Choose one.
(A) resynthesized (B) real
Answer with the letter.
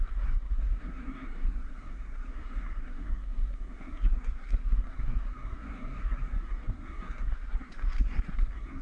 A